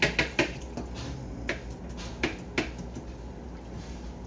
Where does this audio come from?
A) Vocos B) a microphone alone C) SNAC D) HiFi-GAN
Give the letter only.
B